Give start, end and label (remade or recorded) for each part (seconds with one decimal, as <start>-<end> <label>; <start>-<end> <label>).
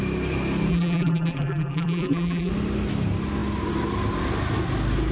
0.0-0.7 recorded; 0.7-2.5 remade; 2.5-5.1 recorded